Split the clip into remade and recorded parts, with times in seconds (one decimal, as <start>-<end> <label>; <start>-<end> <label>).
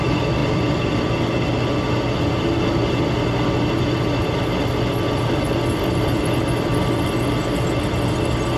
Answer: 0.0-8.6 recorded